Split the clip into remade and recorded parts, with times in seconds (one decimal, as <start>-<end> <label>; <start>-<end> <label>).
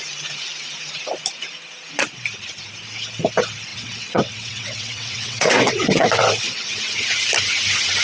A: 0.0-3.7 recorded; 3.7-6.8 remade; 6.8-8.0 recorded